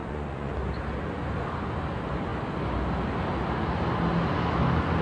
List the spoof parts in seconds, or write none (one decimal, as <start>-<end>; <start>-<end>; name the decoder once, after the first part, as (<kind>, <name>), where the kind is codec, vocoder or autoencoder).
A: 0.0-0.5 (vocoder, Vocos)